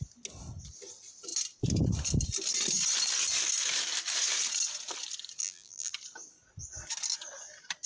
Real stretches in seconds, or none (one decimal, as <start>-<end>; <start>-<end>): 0.0-5.4; 5.9-7.9